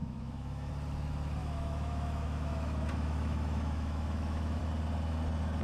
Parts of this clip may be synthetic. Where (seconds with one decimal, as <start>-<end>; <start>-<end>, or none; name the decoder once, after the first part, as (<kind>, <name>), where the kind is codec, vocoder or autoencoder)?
0.0-0.7 (autoencoder, DAC-VAE); 1.4-4.6